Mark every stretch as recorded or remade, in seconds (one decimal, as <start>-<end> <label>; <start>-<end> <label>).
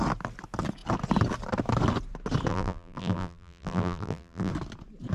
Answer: 0.0-2.5 recorded; 2.5-4.5 remade; 4.5-5.1 recorded